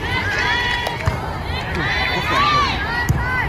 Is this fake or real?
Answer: real